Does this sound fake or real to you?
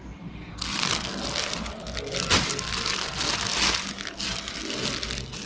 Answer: real